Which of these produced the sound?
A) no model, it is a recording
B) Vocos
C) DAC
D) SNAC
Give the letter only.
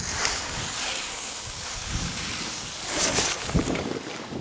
C